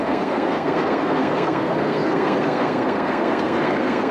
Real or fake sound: fake